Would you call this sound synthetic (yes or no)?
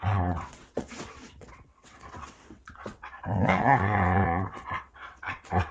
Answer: yes